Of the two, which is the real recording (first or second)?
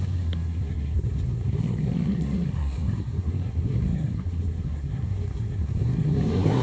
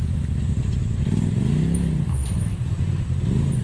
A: second